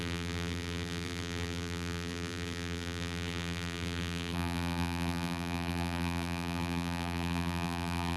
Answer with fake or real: fake